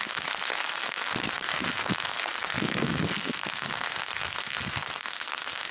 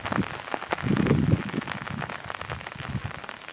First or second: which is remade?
first